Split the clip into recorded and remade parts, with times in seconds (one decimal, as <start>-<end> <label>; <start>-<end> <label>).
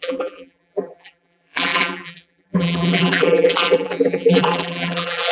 0.0-5.3 remade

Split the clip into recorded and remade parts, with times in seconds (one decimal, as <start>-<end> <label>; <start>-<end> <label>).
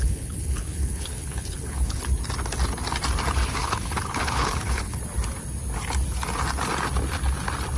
0.0-2.0 remade; 2.0-3.6 recorded; 3.6-5.0 remade; 5.0-7.8 recorded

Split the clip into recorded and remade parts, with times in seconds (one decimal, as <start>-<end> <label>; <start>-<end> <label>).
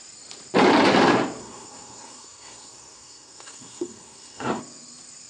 0.0-1.4 recorded; 1.4-4.6 remade; 4.6-5.3 recorded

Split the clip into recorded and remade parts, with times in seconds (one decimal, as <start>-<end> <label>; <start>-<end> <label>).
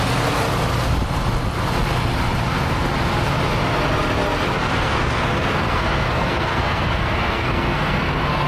0.0-4.5 recorded; 4.5-8.5 remade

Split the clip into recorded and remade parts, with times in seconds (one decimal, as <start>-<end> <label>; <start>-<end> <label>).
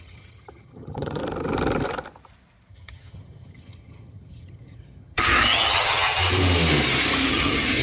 0.0-1.2 remade; 1.2-2.7 recorded; 2.7-6.2 remade; 6.2-7.3 recorded; 7.3-7.8 remade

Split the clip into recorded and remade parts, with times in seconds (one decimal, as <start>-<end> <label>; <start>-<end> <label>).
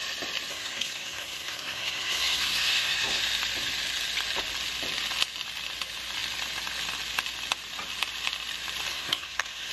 0.0-0.5 recorded; 0.5-3.2 remade; 3.2-8.9 recorded; 8.9-9.7 remade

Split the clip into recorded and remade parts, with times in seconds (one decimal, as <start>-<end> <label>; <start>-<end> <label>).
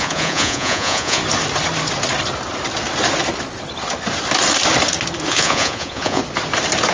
0.0-1.2 remade; 1.2-5.3 recorded; 5.3-6.2 remade; 6.2-6.9 recorded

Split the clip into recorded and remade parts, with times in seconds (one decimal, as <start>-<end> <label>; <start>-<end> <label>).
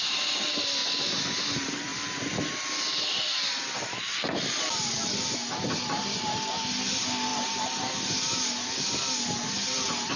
0.0-10.2 recorded